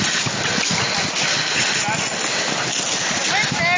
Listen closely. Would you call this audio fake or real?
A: real